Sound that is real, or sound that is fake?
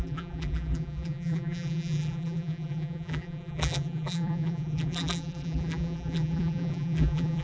fake